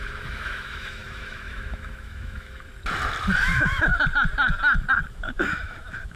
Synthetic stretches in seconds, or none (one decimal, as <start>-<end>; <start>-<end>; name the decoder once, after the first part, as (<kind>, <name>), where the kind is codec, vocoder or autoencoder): 0.0-2.7 (autoencoder, DAC-VAE); 3.4-3.9; 5.1-6.2